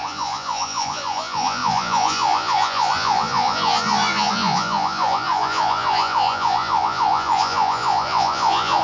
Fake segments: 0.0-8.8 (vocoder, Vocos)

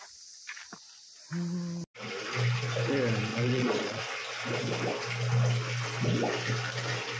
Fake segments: 3.3-4.0 (vocoder, Vocos)

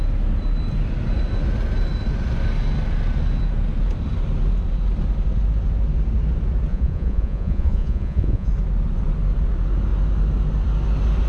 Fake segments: 6.7-8.5 (vocoder, Vocos)

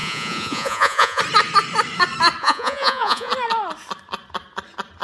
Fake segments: 0.0-1.2 (vocoder, Vocos); 2.4-3.3